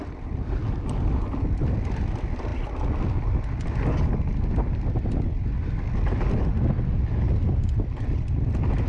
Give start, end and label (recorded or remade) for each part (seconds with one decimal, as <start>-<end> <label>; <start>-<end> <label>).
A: 0.0-8.9 recorded